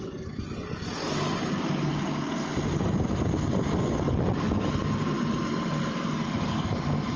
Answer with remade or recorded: recorded